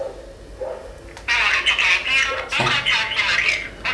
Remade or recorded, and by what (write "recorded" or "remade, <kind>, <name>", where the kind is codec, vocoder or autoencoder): recorded